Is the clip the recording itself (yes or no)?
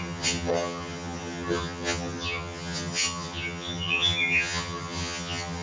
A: no